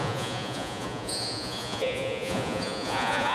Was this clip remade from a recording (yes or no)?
yes